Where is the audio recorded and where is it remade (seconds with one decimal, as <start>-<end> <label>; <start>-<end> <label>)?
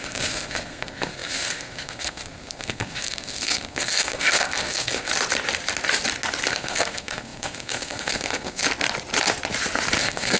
0.0-5.1 remade; 5.1-6.5 recorded; 6.5-8.6 remade; 8.6-10.0 recorded; 10.0-10.4 remade